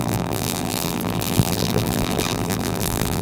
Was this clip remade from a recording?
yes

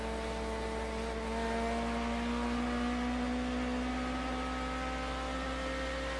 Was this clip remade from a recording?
no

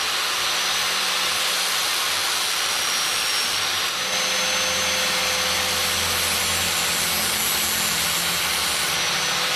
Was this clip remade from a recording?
no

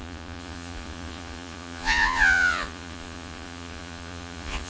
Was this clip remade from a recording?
yes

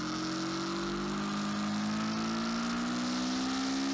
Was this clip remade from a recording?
no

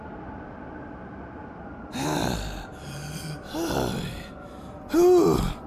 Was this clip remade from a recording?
no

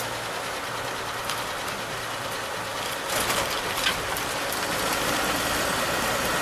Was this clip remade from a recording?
no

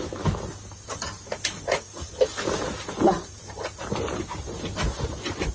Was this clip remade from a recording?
no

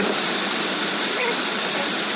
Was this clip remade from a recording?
no